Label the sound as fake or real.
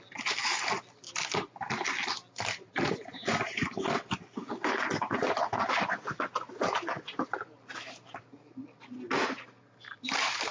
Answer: real